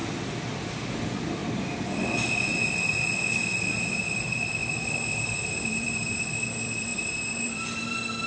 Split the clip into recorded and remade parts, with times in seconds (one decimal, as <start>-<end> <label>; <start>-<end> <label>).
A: 0.0-1.4 remade; 1.4-3.6 recorded; 3.6-6.9 remade; 6.9-7.4 recorded; 7.4-8.3 remade